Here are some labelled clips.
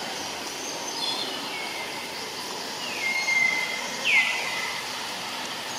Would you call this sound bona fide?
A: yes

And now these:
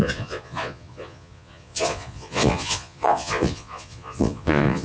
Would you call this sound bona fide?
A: no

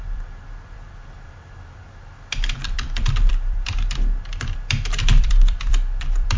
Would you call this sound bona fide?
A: no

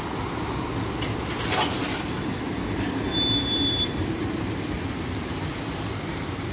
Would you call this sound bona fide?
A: yes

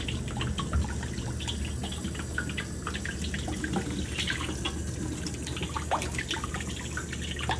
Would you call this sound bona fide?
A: yes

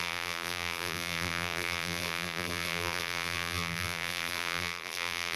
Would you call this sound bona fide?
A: no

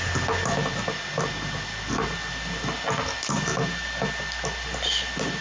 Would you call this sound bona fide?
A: yes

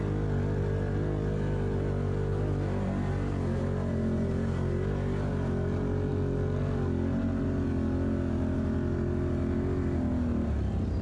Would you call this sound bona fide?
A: yes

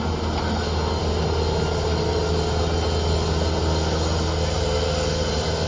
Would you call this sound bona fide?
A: yes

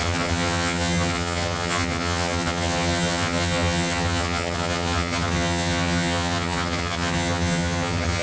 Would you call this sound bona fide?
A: no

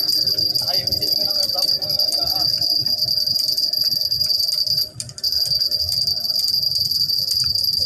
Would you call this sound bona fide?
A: yes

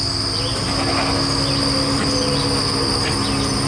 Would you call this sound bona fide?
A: yes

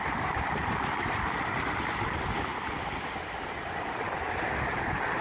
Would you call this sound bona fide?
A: yes